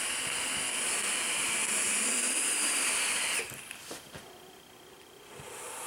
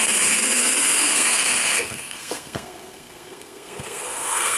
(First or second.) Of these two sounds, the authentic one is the first